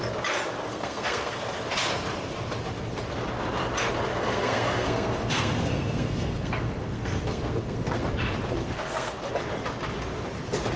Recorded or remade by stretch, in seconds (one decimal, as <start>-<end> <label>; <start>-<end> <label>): 0.0-0.7 recorded; 0.7-1.4 remade; 1.4-4.1 recorded; 4.1-8.1 remade; 8.1-8.6 recorded; 8.6-9.3 remade; 9.3-10.8 recorded